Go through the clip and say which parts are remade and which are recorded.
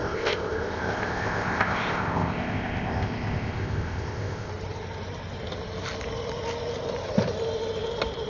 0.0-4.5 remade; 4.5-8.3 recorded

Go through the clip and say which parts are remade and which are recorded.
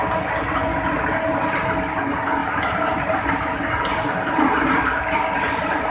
0.0-5.9 recorded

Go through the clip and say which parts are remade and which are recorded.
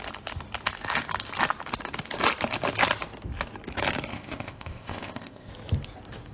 0.0-4.1 recorded; 4.1-5.5 remade; 5.5-6.3 recorded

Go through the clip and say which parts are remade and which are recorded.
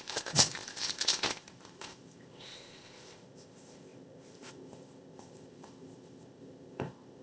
0.0-7.2 remade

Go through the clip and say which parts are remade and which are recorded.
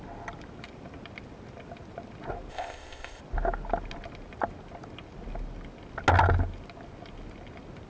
0.0-2.5 recorded; 2.5-3.2 remade; 3.2-7.9 recorded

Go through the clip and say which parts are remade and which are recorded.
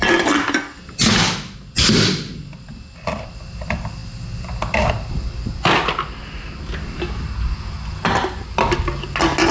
0.0-9.5 recorded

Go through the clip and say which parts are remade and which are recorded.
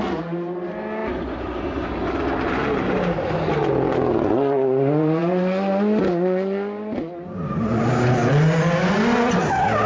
0.0-9.9 recorded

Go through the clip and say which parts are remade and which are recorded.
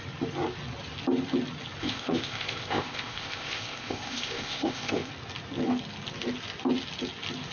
0.0-1.8 recorded; 1.8-5.1 remade; 5.1-7.5 recorded